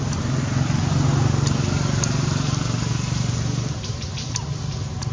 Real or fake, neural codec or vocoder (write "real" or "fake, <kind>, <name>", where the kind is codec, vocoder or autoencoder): real